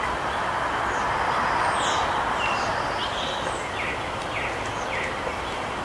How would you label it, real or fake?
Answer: real